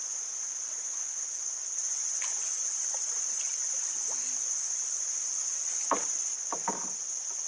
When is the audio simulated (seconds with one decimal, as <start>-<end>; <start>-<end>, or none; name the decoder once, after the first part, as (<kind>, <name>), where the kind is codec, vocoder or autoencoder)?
none